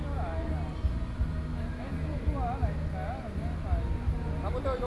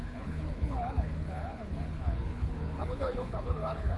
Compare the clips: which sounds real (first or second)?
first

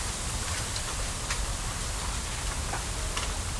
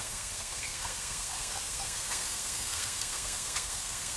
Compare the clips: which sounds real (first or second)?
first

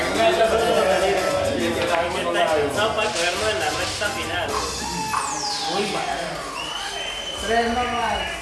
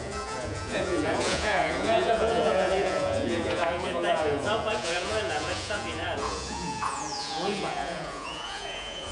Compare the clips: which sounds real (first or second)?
first